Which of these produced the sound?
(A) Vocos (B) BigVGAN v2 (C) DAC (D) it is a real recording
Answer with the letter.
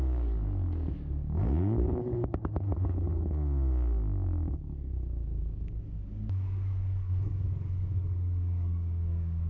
C